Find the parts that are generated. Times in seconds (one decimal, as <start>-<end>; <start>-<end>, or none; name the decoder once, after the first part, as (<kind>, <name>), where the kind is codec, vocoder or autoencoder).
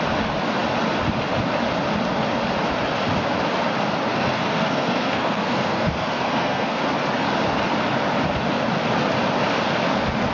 4.1-6.8 (codec, SNAC)